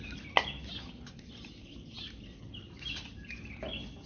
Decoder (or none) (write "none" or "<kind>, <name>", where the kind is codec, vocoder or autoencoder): none